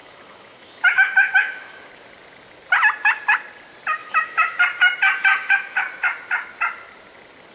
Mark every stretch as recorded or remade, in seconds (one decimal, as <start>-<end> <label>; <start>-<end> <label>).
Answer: 0.0-1.9 remade; 1.9-4.0 recorded; 4.0-4.6 remade; 4.6-5.3 recorded; 5.3-5.8 remade; 5.8-7.5 recorded